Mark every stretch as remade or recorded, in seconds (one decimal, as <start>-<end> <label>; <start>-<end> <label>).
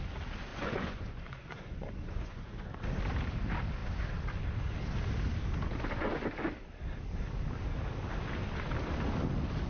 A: 0.0-0.5 recorded; 0.5-2.7 remade; 2.7-9.7 recorded